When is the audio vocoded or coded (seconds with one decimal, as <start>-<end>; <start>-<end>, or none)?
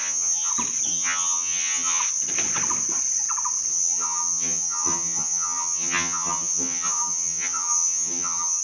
0.0-0.5; 0.9-2.0; 3.7-8.6